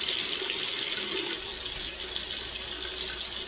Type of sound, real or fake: real